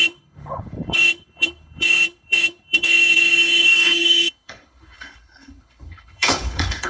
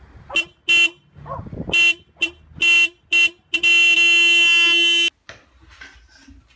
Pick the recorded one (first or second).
second